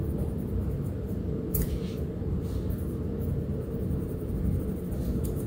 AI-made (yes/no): no